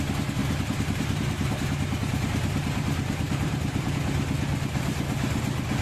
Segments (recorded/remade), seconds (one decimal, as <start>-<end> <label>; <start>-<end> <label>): 0.0-0.4 recorded; 0.4-3.9 remade; 3.9-5.8 recorded